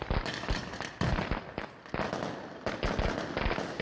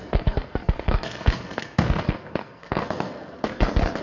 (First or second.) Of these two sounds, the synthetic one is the second